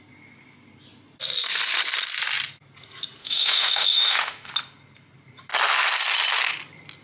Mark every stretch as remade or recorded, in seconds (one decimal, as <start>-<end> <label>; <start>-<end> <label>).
0.0-3.2 recorded; 3.2-4.5 remade; 4.5-7.0 recorded

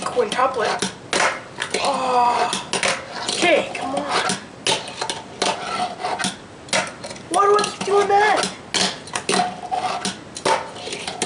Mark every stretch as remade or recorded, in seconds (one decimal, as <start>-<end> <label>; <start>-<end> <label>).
0.0-11.3 recorded

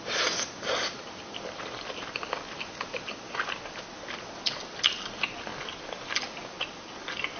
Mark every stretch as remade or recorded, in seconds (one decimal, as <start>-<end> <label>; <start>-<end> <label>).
0.0-5.5 remade; 5.5-7.0 recorded; 7.0-7.4 remade

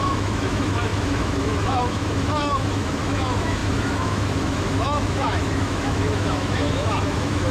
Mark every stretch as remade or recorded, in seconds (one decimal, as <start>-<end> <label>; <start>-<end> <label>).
0.0-7.5 remade